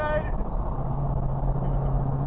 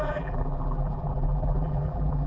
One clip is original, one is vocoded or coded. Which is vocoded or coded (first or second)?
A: second